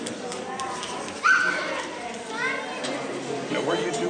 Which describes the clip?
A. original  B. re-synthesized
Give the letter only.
A